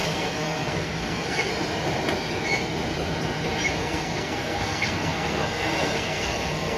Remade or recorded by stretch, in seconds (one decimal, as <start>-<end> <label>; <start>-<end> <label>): 0.0-1.5 remade; 1.5-3.8 recorded; 3.8-6.8 remade

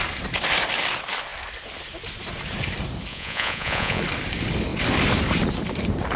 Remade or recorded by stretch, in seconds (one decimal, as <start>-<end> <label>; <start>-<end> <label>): 0.0-3.1 recorded; 3.1-4.0 remade; 4.0-6.2 recorded

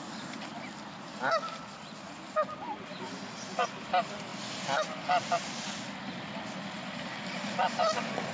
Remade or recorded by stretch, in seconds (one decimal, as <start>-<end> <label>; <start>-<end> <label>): 0.0-8.3 recorded

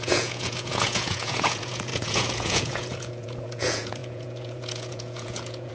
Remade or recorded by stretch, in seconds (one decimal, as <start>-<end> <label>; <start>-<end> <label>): 0.0-5.7 remade

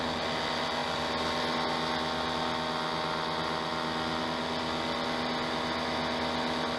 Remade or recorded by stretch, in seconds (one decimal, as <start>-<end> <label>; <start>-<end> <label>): 0.0-6.8 recorded

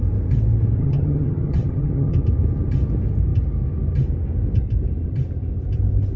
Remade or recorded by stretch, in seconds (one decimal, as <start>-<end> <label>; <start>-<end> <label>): 0.0-0.8 recorded; 0.8-2.2 remade; 2.2-6.2 recorded

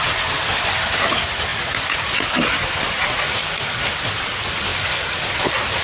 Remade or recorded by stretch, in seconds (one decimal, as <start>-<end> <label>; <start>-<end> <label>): 0.0-5.8 recorded